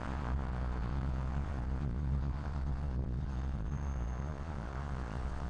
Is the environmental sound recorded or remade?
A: remade